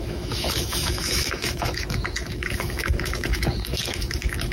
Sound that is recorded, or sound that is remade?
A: remade